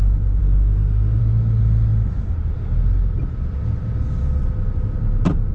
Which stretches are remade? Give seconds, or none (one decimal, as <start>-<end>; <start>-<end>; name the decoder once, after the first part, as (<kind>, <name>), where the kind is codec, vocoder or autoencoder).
0.4-1.2 (autoencoder, DAC-VAE)